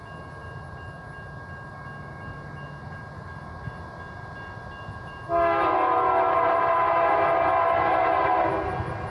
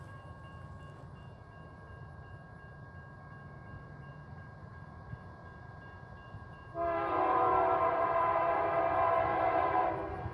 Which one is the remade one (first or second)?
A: second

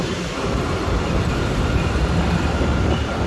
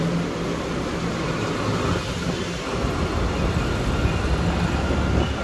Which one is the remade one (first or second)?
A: first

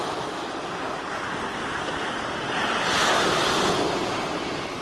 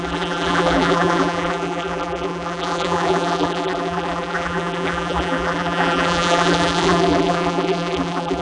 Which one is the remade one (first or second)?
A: second